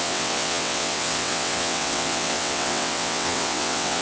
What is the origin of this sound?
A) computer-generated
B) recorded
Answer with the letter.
A